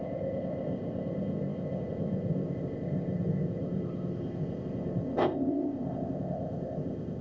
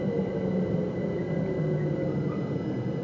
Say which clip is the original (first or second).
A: second